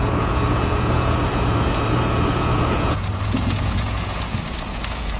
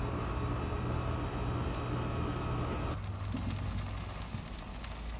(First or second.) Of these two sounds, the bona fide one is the second